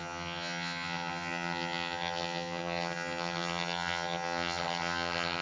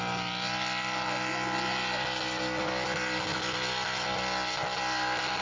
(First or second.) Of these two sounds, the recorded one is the second